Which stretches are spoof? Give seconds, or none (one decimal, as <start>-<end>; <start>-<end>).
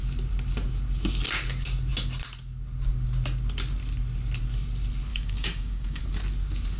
5.1-6.0